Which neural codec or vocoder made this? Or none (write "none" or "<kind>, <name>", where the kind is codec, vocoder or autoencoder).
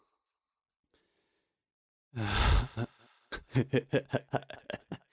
none